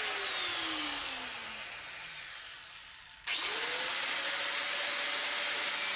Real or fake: real